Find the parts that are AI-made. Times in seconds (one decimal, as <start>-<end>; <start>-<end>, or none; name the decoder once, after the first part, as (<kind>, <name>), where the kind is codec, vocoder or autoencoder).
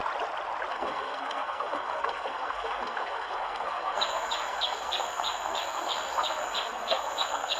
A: 0.7-7.6 (codec, SNAC)